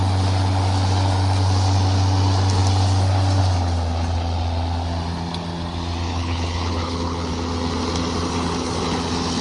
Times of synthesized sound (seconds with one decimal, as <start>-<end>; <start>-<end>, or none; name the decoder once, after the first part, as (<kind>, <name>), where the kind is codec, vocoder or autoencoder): 6.1-7.3 (codec, HILCodec)